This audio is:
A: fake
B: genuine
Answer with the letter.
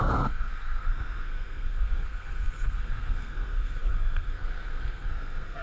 A